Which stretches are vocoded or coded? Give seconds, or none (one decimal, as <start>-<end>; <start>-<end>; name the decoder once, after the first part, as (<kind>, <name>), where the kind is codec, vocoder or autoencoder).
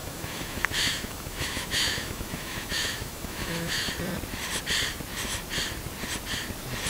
0.0-3.9 (autoencoder, DAC-VAE)